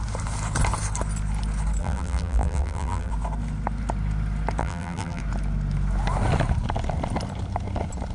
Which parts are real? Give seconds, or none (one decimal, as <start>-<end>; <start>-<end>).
0.0-1.8; 3.1-4.6; 5.2-8.1